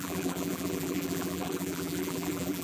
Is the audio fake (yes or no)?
yes